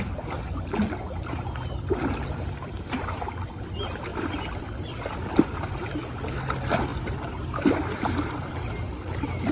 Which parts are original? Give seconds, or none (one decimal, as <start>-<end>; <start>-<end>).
0.0-4.1; 6.2-9.5

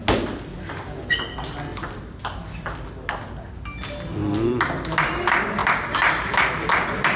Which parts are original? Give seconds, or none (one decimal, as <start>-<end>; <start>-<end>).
0.0-7.2

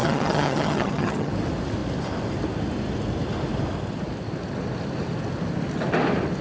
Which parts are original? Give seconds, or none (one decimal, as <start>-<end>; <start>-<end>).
1.3-6.4

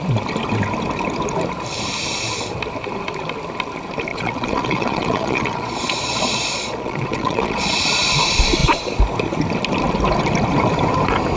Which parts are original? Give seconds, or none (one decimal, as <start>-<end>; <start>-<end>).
0.0-4.1; 8.1-11.4

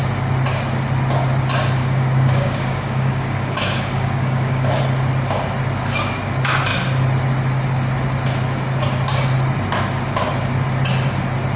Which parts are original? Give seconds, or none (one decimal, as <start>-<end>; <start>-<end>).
0.0-1.8; 4.8-11.6

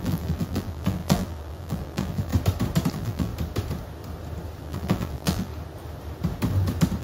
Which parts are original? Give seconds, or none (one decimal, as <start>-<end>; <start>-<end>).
2.3-2.9; 3.3-4.6; 5.5-7.0

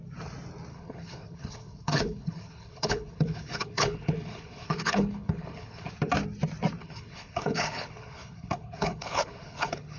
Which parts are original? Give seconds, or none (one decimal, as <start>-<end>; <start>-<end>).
0.0-0.7; 5.9-6.8

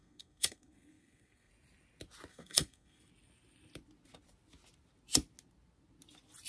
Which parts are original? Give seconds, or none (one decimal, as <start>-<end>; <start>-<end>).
1.5-2.3; 3.1-6.5